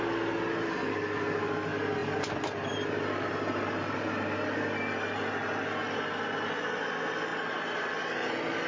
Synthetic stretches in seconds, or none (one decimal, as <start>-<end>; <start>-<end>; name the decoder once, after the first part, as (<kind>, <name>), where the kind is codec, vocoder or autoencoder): none